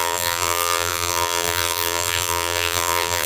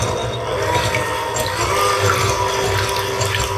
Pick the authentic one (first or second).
second